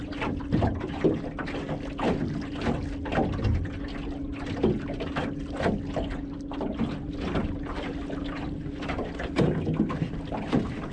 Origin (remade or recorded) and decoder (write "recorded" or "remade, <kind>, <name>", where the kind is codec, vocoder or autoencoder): recorded